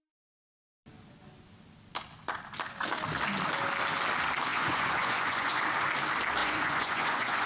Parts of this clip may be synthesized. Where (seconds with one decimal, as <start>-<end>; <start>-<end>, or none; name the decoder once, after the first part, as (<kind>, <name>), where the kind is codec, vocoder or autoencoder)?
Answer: 4.5-5.6 (vocoder, Vocos); 6.4-7.5

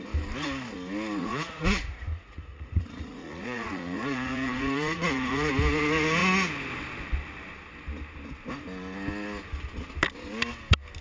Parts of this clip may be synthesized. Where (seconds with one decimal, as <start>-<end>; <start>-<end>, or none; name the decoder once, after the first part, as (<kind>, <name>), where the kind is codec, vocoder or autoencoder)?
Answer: 1.2-5.5 (vocoder, Vocos)

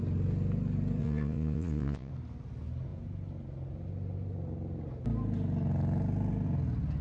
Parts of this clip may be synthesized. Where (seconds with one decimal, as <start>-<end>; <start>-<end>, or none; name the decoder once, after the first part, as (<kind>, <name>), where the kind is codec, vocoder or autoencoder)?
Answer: 1.0-2.1 (vocoder, Vocos)

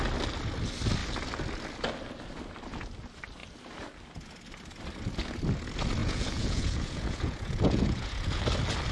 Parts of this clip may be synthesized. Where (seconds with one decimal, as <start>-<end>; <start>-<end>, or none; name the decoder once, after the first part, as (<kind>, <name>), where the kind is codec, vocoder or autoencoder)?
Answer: 6.0-8.4 (vocoder, Vocos)

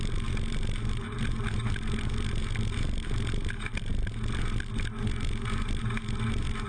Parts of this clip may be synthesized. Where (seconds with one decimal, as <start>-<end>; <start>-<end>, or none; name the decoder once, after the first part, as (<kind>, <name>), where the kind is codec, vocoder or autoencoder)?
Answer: none